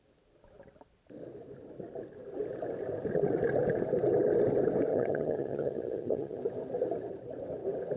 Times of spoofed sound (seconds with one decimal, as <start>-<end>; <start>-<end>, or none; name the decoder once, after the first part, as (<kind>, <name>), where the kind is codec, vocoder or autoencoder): 4.9-6.4 (vocoder, HiFi-GAN)